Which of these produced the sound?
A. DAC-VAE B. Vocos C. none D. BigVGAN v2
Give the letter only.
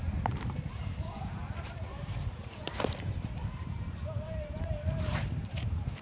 D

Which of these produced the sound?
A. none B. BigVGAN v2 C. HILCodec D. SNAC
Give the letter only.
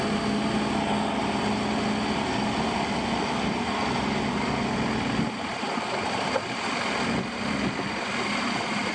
A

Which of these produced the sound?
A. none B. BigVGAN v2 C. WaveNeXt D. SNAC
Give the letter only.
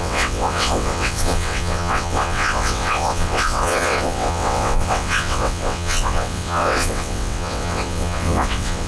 C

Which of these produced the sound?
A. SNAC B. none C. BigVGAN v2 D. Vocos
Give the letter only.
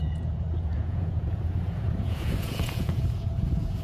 D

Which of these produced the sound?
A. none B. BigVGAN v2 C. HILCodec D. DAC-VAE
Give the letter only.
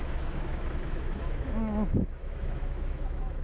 D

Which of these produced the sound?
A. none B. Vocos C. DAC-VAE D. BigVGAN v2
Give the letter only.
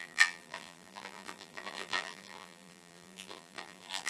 D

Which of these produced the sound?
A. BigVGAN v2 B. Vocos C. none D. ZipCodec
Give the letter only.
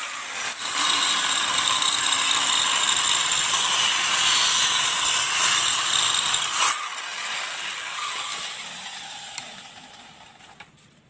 C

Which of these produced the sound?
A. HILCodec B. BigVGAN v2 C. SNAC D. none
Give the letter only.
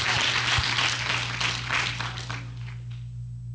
D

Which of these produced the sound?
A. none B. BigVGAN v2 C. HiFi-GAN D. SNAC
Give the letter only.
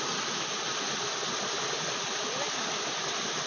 A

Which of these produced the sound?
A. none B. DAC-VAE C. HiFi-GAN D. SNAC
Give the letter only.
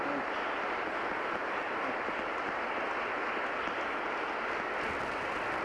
A